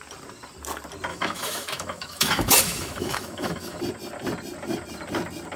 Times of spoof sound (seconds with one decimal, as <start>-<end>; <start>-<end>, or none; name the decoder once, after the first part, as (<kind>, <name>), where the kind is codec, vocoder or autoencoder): 1.1-3.8 (autoencoder, DAC-VAE)